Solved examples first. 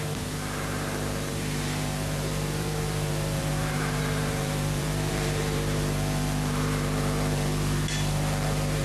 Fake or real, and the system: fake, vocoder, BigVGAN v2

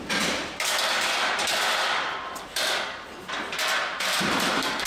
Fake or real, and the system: fake, vocoder, BigVGAN v2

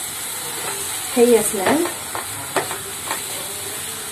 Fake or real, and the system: real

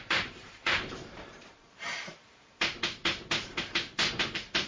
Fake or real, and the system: fake, vocoder, BigVGAN v2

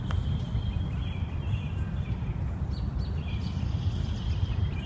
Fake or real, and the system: real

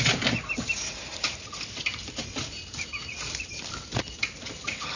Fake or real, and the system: real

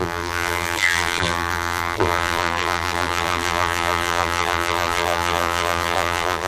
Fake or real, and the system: fake, vocoder, BigVGAN v2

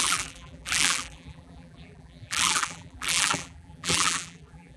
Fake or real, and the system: fake, vocoder, BigVGAN v2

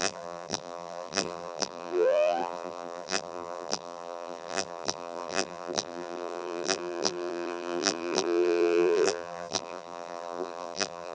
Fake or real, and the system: fake, vocoder, BigVGAN v2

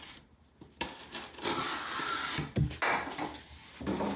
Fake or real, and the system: real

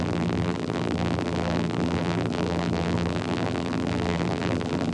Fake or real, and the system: fake, vocoder, BigVGAN v2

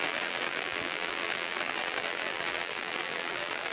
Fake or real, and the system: fake, vocoder, BigVGAN v2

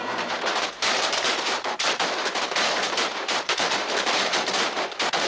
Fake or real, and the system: fake, vocoder, BigVGAN v2